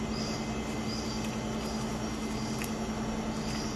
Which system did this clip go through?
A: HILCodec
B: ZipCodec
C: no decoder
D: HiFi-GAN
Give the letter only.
C